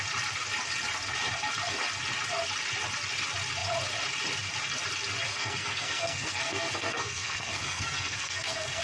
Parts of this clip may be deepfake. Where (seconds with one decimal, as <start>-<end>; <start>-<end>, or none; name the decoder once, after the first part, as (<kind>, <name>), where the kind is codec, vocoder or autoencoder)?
5.3-8.8 (codec, SNAC)